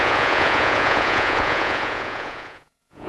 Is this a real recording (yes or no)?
no